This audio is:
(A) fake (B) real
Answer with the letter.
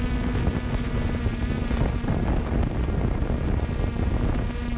B